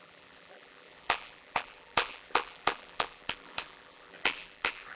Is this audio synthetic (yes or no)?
yes